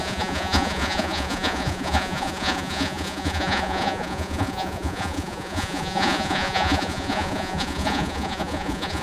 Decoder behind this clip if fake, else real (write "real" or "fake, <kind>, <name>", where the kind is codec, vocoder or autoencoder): fake, vocoder, Vocos